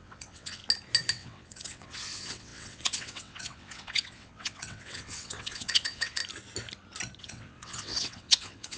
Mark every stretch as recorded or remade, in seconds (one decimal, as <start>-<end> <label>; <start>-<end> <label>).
0.0-0.6 remade; 0.6-1.1 recorded; 1.1-6.2 remade; 6.2-7.2 recorded; 7.2-8.8 remade